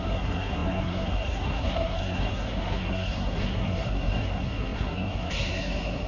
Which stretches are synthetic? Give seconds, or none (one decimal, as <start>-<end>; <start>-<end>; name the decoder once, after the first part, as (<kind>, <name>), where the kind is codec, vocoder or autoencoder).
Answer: 0.0-6.1 (codec, SNAC)